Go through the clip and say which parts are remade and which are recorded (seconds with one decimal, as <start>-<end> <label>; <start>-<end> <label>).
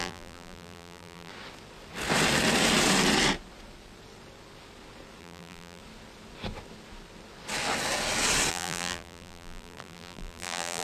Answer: 0.0-1.3 remade; 1.3-5.2 recorded; 5.2-5.8 remade; 5.8-8.5 recorded; 8.5-10.8 remade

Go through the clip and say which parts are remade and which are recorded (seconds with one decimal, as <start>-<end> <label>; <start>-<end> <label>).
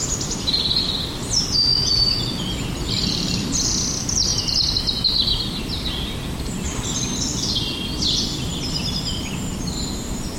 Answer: 0.0-1.7 remade; 1.7-2.8 recorded; 2.8-4.3 remade; 4.3-4.9 recorded; 4.9-10.4 remade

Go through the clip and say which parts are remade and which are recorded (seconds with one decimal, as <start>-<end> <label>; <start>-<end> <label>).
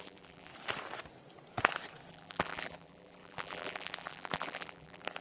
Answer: 0.0-0.5 remade; 0.5-2.1 recorded; 2.1-5.2 remade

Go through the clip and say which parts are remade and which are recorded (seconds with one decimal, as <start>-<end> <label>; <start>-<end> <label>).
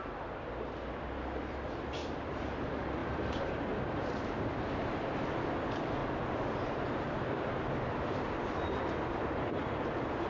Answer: 0.0-2.0 recorded; 2.0-2.6 remade; 2.6-3.0 recorded; 3.0-4.6 remade; 4.6-6.0 recorded; 6.0-10.3 remade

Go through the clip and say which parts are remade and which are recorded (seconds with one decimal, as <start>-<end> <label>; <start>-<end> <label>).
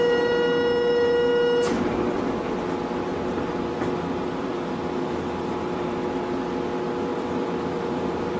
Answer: 0.0-3.1 recorded; 3.1-6.0 remade; 6.0-7.1 recorded; 7.1-8.4 remade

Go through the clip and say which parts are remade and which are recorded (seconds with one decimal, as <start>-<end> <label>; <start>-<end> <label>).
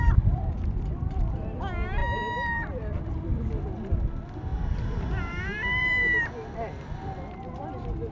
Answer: 0.0-8.1 remade